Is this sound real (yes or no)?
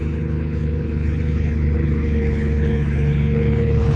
no